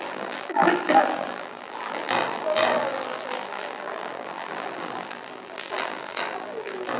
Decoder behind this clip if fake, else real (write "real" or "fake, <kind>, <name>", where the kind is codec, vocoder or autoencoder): fake, vocoder, BigVGAN v2